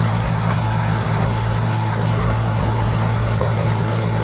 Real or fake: fake